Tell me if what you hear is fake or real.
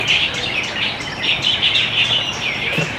fake